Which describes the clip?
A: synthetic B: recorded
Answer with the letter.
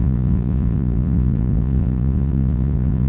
A